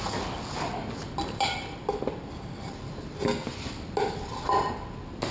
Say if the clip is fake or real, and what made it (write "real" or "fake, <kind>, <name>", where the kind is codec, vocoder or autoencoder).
real